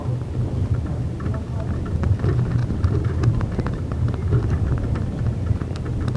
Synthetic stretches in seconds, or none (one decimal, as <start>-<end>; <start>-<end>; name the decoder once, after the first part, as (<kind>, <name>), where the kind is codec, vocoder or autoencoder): 2.6-5.8 (vocoder, BigVGAN v2)